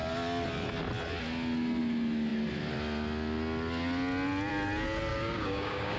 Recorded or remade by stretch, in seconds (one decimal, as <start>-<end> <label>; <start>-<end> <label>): 0.0-5.1 recorded; 5.1-6.0 remade